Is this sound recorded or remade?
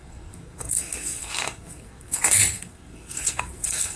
remade